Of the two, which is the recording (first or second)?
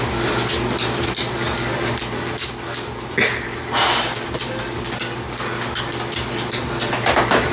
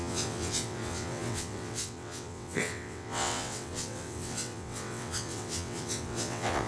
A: first